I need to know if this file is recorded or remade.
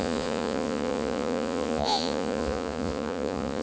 remade